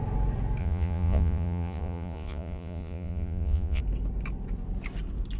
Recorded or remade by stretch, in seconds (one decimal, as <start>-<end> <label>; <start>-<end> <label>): 0.0-0.6 recorded; 0.6-3.8 remade; 3.8-5.4 recorded